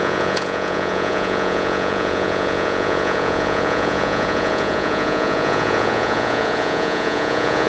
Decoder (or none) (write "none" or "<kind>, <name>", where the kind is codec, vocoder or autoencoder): vocoder, Vocos